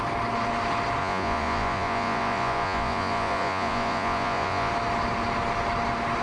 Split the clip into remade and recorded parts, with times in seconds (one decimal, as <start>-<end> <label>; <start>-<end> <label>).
0.0-1.0 recorded; 1.0-4.7 remade; 4.7-6.2 recorded